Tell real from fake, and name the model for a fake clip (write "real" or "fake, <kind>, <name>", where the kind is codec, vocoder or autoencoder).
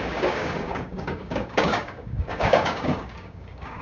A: fake, codec, DAC